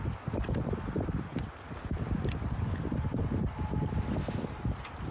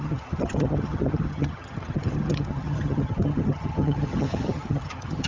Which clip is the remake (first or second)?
second